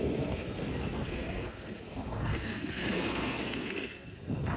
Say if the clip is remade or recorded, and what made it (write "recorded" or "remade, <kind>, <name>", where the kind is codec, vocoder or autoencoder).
remade, codec, SNAC